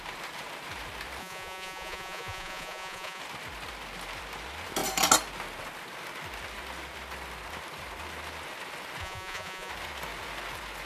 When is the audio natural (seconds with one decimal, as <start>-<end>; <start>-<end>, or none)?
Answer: 0.0-1.2; 3.2-9.0; 9.7-10.9